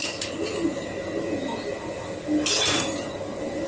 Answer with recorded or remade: recorded